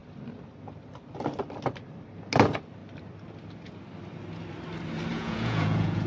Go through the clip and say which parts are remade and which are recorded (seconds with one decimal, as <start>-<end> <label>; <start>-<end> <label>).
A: 0.0-5.1 recorded; 5.1-6.1 remade